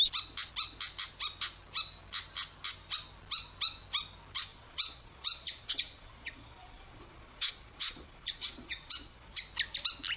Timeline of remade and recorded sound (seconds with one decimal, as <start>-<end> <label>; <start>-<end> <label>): 0.0-4.5 recorded; 4.5-9.4 remade; 9.4-10.2 recorded